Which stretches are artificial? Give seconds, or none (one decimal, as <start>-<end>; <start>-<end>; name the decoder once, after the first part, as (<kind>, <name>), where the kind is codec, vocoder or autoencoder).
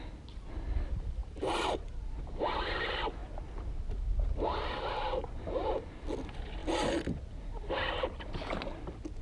none